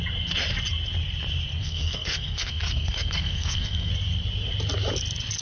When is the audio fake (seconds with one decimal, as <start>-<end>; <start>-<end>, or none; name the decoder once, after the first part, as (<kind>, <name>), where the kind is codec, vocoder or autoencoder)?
1.6-3.9 (codec, SNAC)